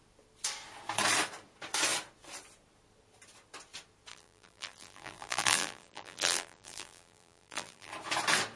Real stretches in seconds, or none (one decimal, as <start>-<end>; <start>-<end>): 0.0-4.1; 7.9-8.6